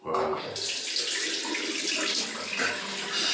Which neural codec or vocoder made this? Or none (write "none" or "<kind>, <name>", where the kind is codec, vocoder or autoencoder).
none